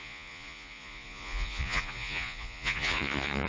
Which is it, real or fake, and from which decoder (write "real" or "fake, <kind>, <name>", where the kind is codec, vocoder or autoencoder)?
fake, vocoder, Vocos